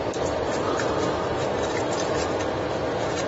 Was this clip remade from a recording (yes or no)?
no